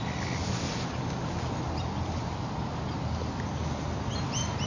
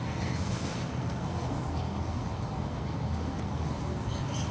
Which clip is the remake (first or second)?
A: second